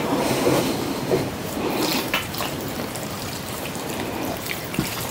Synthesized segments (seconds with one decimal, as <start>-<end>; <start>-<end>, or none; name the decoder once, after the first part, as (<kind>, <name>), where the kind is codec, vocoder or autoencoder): 0.0-5.1 (vocoder, BigVGAN v2)